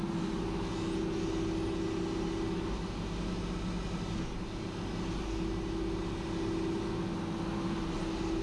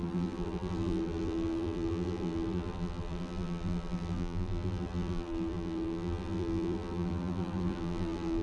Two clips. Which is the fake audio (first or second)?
second